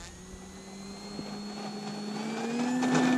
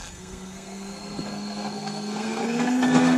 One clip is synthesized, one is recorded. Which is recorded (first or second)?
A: first